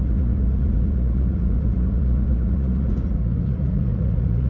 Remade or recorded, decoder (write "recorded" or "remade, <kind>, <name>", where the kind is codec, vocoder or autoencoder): remade, vocoder, Vocos